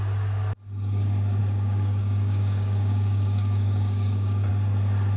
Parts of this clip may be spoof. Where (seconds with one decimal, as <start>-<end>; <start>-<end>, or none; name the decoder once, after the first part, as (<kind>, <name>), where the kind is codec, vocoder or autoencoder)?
1.4-4.5 (codec, DAC)